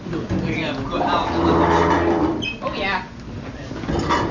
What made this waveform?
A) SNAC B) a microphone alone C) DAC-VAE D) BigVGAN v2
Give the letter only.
B